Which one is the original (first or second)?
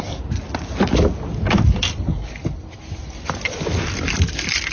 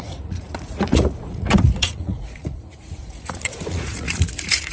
first